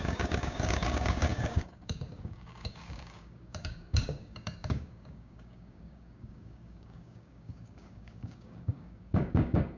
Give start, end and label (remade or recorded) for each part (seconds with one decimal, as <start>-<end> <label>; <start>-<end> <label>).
0.0-9.8 remade